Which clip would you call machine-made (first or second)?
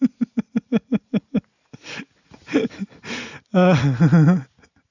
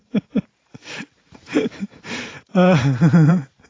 second